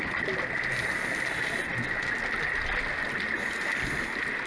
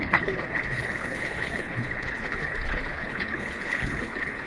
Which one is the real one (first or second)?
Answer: first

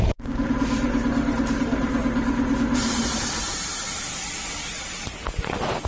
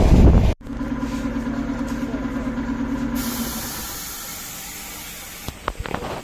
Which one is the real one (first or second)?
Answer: second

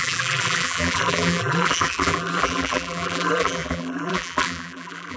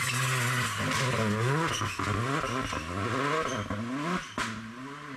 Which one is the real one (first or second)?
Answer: second